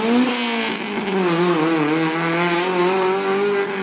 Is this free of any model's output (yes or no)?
yes